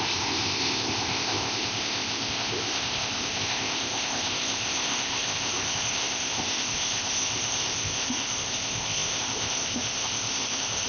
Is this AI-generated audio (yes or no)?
yes